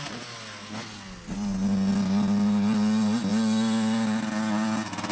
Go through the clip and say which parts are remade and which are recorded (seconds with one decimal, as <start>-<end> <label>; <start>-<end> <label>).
0.0-5.1 recorded